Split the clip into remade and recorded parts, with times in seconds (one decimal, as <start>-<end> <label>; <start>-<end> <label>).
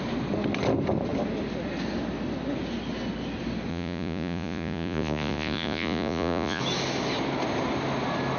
0.0-3.7 recorded; 3.7-6.6 remade; 6.6-8.4 recorded